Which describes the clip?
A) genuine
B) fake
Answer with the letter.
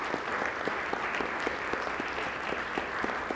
A